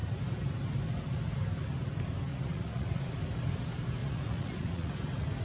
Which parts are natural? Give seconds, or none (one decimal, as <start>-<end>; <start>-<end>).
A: 0.0-2.3; 3.1-4.0; 4.9-5.4